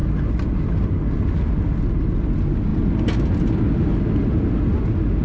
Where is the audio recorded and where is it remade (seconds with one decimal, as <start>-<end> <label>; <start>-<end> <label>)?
0.0-5.2 recorded